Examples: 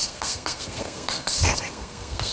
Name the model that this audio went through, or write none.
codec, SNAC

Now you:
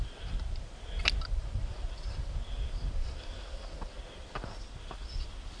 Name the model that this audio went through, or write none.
none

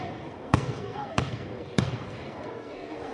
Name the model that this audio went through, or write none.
codec, SNAC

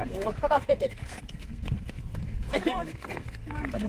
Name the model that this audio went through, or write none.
codec, SNAC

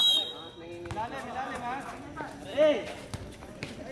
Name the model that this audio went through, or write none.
none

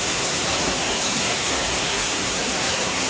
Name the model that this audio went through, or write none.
codec, SNAC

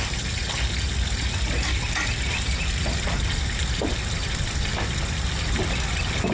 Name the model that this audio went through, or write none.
none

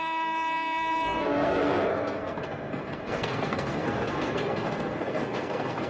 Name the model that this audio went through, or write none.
codec, SNAC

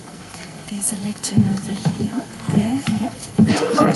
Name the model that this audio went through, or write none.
codec, SNAC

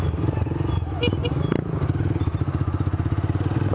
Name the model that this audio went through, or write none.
none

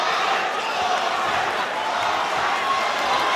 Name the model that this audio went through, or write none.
none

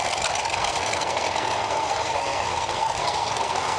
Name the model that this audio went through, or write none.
codec, SNAC